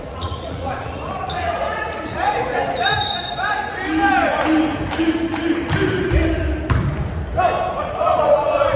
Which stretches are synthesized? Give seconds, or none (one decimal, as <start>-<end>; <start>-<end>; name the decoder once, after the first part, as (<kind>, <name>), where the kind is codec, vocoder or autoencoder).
0.0-3.3 (vocoder, Vocos); 7.8-8.8